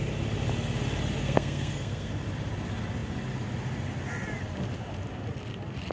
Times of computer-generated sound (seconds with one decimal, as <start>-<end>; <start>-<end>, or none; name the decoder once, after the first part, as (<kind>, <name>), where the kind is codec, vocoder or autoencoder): 1.2-2.1 (codec, SNAC)